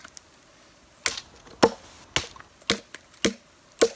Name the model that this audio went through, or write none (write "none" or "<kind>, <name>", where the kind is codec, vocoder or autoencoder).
none